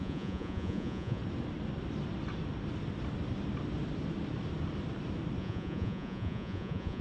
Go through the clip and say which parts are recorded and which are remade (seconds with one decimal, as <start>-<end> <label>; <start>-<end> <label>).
0.0-1.2 remade; 1.2-5.4 recorded; 5.4-7.0 remade